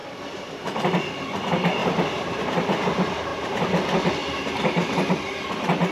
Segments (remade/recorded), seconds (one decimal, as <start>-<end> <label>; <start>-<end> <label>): 0.0-1.8 recorded; 1.8-2.8 remade; 2.8-5.9 recorded